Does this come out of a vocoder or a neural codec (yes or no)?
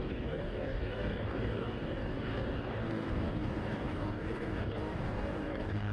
yes